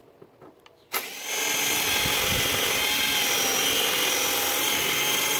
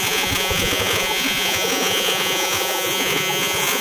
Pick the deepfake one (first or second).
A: second